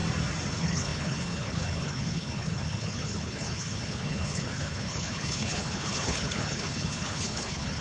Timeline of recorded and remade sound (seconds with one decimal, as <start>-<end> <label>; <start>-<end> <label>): 0.0-0.5 recorded; 0.5-7.8 remade